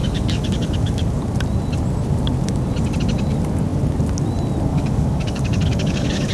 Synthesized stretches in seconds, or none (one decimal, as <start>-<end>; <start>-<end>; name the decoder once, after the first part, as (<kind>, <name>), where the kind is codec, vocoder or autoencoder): 0.0-1.1 (codec, DAC); 4.7-6.3